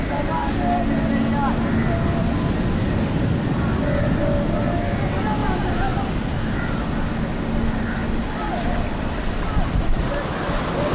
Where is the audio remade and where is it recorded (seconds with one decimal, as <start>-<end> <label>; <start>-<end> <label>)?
0.0-10.9 recorded